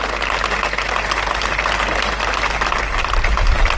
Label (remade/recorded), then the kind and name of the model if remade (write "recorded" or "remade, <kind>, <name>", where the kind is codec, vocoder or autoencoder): recorded